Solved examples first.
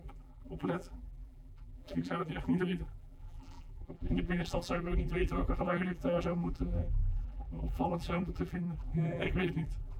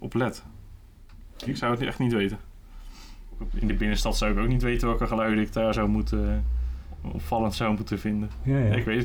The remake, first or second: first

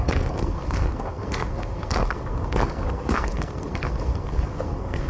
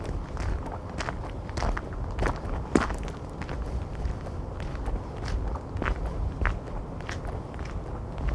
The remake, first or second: first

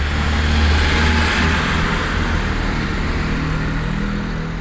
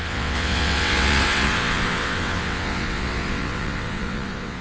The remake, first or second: second